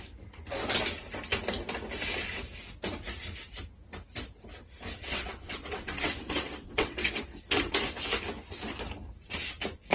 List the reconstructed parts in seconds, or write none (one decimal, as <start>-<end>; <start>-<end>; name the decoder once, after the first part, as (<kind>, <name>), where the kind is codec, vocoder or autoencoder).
5.0-7.1 (vocoder, WaveNeXt)